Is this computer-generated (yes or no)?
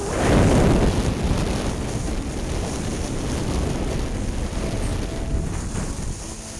no